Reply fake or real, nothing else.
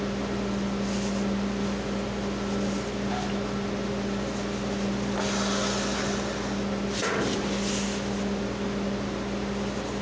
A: real